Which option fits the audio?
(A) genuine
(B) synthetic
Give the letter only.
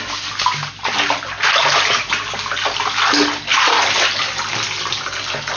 A